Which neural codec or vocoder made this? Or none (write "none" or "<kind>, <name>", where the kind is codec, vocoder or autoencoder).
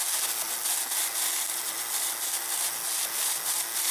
none